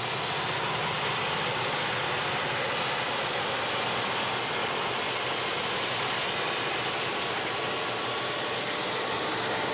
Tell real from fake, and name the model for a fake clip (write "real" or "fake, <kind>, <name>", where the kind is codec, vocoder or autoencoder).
real